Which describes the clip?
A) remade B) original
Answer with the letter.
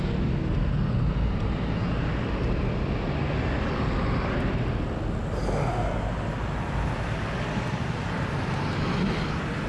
B